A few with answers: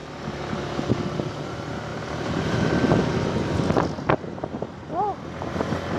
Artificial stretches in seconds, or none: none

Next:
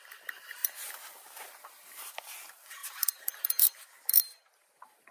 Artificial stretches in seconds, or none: 0.0-5.1 (vocoder, BigVGAN v2)